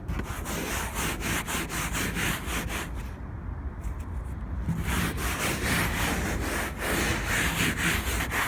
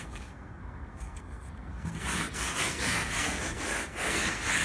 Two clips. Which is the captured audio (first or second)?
first